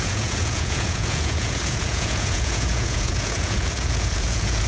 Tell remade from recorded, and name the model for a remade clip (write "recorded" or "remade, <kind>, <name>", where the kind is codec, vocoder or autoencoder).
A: remade, vocoder, Vocos